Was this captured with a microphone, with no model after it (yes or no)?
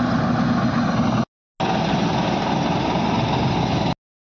yes